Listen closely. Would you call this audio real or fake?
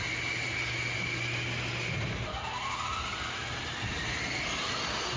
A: real